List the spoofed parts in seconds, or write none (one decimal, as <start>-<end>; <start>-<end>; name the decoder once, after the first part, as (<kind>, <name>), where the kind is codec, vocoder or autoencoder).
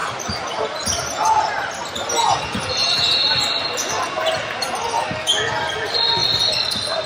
none